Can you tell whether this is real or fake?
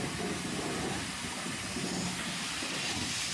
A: real